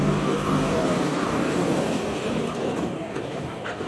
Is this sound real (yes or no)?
no